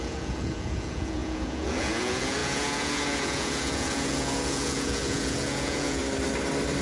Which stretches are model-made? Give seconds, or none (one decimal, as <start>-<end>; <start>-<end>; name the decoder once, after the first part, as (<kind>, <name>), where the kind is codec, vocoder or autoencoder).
0.0-6.0 (vocoder, Vocos)